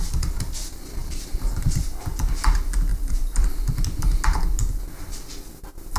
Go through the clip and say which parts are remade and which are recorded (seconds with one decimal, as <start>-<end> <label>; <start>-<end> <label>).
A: 0.0-1.0 recorded; 1.0-2.0 remade; 2.0-2.9 recorded; 2.9-4.2 remade; 4.2-6.0 recorded